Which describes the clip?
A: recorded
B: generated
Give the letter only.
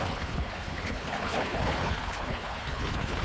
B